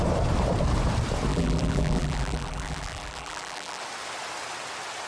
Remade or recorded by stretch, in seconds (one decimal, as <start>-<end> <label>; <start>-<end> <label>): 0.0-1.3 recorded; 1.3-3.8 remade; 3.8-5.1 recorded